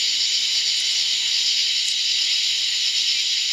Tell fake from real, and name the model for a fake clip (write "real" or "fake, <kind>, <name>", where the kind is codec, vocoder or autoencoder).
real